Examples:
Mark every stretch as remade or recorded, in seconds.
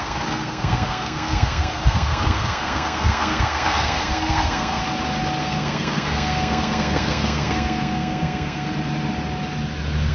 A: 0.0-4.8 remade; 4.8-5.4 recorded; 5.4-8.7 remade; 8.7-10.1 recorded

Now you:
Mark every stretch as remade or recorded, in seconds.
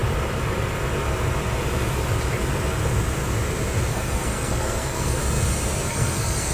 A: 0.0-3.9 recorded; 3.9-5.2 remade; 5.2-5.9 recorded; 5.9-6.5 remade